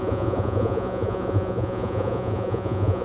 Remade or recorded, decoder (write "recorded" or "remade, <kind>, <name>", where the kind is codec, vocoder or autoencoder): remade, vocoder, Vocos